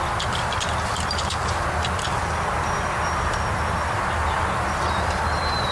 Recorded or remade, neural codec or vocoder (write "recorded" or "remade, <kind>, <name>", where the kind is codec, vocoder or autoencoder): recorded